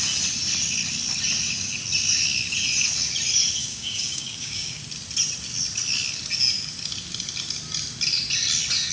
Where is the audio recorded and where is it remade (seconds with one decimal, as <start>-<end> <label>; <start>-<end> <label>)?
0.0-3.6 recorded; 3.6-4.8 remade; 4.8-8.9 recorded